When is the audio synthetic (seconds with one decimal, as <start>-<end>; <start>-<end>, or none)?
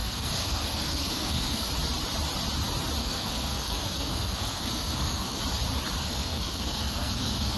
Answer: 0.0-1.7; 3.0-5.4; 6.0-7.6